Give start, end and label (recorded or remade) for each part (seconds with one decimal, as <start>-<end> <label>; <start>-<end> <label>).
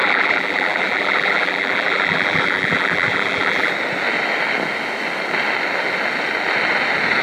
0.0-3.7 remade; 3.7-7.2 recorded